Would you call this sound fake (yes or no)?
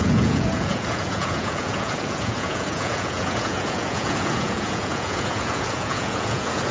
yes